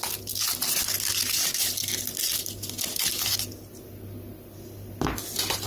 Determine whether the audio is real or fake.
real